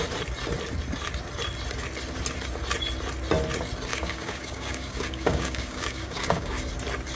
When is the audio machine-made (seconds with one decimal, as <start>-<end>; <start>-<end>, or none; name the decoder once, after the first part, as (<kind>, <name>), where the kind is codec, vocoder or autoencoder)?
3.9-6.7 (codec, DAC)